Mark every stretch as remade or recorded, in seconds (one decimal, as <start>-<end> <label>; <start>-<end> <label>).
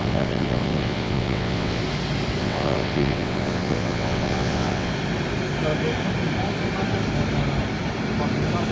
0.0-1.8 remade; 1.8-2.4 recorded; 2.4-4.9 remade; 4.9-8.7 recorded